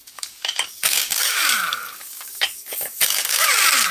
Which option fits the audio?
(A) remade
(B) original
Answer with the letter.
A